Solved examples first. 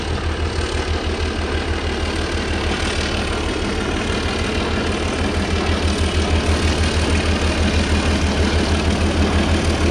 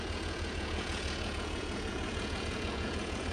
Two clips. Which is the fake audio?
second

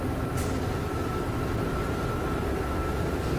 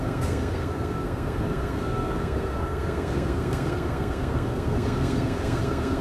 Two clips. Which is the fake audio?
second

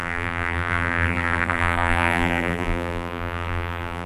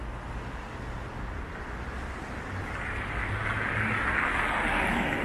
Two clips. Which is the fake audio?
first